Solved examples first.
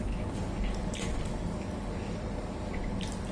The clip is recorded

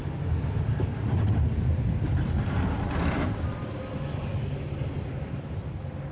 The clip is recorded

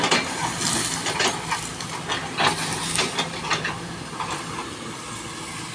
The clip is recorded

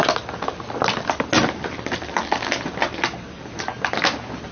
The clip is recorded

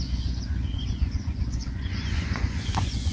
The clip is remade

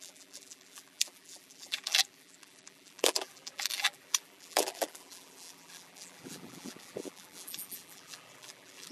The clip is remade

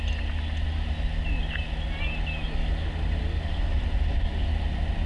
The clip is recorded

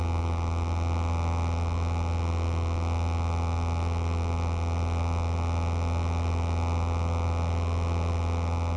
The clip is recorded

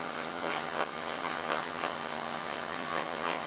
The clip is remade